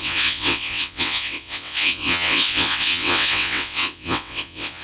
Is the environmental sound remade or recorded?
remade